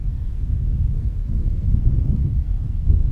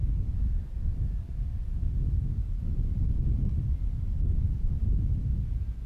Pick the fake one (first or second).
first